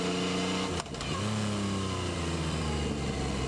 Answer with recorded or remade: remade